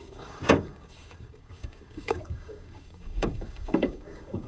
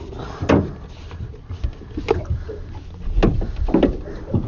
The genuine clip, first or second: second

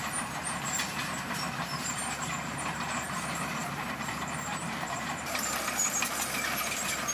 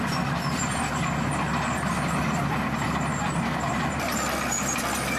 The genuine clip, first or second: second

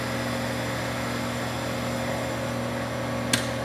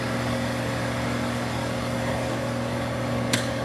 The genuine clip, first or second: first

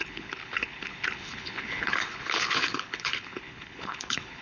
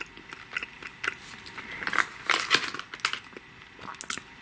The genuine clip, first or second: second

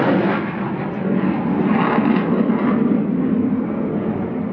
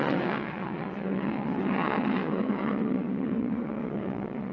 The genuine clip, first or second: first